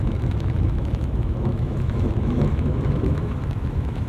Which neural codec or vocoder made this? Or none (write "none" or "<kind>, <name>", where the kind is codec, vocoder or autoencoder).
autoencoder, DAC-VAE